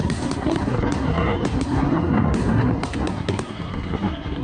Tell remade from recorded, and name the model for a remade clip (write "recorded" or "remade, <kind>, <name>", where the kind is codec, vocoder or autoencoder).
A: remade, codec, SNAC